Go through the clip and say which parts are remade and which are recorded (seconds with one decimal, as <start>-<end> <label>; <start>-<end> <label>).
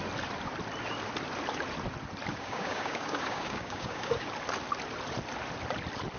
0.0-2.3 recorded; 2.3-4.3 remade; 4.3-6.2 recorded